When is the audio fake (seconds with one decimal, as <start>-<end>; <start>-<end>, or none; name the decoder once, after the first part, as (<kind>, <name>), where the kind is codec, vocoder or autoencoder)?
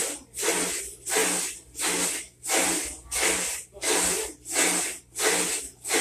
none